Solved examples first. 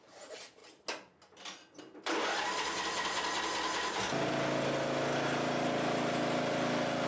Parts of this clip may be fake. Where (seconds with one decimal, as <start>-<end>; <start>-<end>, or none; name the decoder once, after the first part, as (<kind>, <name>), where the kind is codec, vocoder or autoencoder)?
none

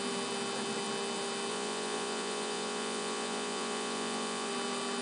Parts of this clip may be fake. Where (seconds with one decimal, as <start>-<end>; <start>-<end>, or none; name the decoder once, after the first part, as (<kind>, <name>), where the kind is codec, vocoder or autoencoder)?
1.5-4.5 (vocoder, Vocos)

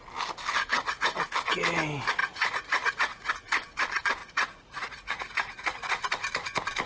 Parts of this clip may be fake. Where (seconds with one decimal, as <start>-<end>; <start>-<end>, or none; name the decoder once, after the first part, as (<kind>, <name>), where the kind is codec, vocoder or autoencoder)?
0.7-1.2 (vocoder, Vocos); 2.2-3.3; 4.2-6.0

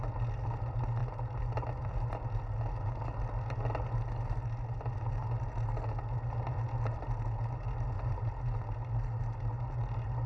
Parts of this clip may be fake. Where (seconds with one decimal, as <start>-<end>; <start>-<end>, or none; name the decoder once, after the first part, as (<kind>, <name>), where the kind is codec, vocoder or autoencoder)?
none

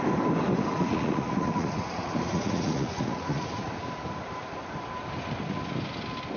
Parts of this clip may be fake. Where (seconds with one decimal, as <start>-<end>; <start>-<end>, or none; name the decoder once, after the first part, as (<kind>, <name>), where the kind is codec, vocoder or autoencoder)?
0.7-3.7 (vocoder, Vocos)

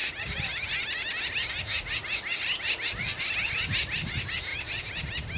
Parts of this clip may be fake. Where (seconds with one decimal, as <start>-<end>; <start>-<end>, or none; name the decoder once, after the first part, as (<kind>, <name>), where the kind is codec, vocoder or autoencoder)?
none